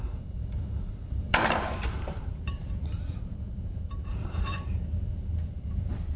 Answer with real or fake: fake